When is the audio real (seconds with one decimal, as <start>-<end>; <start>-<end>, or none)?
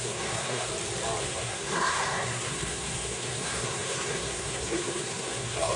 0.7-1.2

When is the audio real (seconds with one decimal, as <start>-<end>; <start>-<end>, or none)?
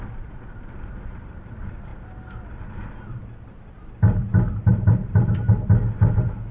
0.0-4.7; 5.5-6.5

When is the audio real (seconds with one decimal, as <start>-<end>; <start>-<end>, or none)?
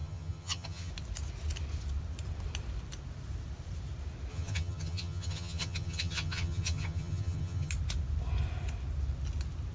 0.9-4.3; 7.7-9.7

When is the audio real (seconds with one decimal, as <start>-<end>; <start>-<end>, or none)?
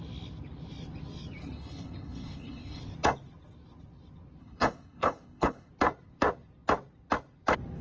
0.0-1.4; 2.8-4.4; 5.7-7.8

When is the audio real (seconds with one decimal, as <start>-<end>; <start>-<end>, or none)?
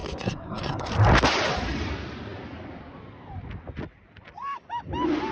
0.9-5.3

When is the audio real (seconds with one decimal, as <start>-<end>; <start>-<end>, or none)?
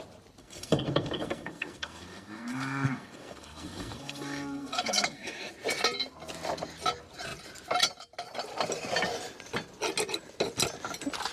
0.0-0.4; 5.5-11.3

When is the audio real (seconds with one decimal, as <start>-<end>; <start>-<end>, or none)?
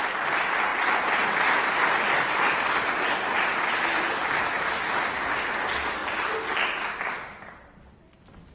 0.0-8.5